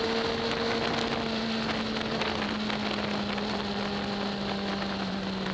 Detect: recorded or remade recorded